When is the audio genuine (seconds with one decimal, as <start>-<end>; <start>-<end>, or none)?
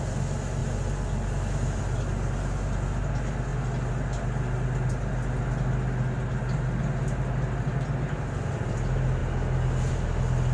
0.0-10.5